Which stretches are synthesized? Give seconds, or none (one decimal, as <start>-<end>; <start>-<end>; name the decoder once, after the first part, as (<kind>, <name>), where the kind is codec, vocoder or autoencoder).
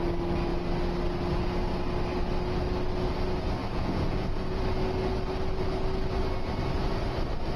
3.6-4.6 (vocoder, Vocos)